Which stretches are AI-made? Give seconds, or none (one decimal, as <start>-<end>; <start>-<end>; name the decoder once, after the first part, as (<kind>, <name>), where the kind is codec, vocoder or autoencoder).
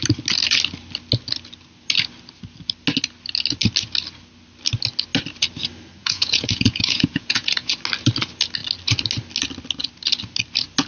6.0-7.8 (vocoder, Vocos)